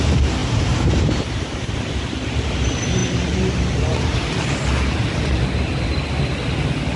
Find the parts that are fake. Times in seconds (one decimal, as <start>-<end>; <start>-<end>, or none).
0.0-5.9